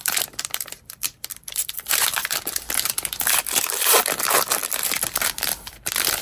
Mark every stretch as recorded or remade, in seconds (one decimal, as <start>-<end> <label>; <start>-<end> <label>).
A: 0.0-6.2 remade